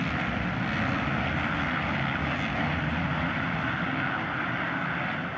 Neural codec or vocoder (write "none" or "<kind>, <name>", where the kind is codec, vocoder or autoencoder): none